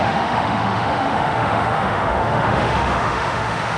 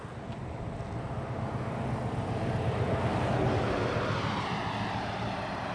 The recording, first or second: second